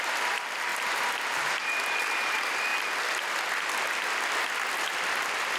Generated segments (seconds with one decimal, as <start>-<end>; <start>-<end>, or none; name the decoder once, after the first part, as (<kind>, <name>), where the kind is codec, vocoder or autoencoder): 0.7-1.7 (vocoder, BigVGAN v2)